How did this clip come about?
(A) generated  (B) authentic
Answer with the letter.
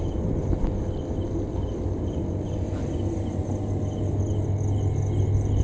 B